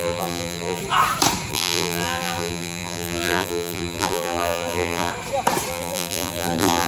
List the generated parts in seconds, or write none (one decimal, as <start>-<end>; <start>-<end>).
0.0-0.8; 1.5-5.1; 5.7-6.9